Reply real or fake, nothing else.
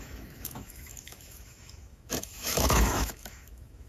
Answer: fake